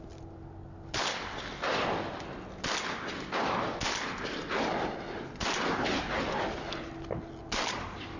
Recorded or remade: recorded